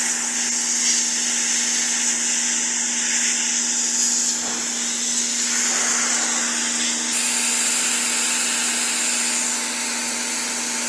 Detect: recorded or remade recorded